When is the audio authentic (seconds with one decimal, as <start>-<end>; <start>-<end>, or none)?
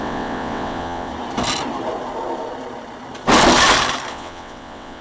1.1-4.1